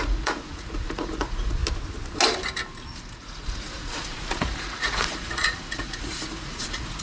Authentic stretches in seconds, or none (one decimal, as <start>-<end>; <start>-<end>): 1.6-2.9